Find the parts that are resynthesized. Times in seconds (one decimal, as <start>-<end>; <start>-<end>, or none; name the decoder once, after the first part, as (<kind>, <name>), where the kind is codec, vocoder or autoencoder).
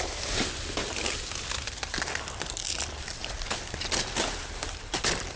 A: none